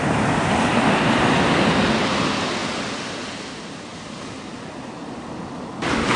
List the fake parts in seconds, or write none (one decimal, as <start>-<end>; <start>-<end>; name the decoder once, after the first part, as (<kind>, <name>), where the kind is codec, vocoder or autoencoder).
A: none